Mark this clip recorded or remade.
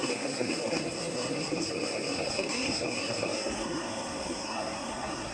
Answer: remade